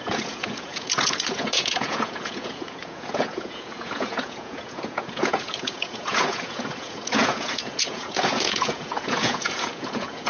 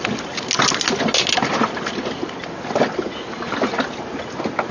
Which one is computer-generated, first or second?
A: first